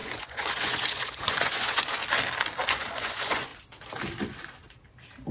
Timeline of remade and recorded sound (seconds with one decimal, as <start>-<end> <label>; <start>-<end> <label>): 0.0-2.0 remade; 2.0-2.7 recorded; 2.7-3.5 remade; 3.5-5.3 recorded